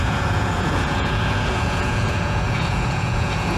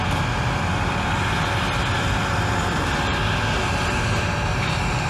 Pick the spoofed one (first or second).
first